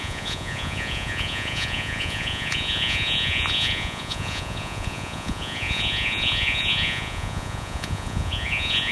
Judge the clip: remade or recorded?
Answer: remade